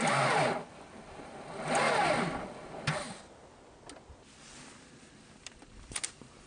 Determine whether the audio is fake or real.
real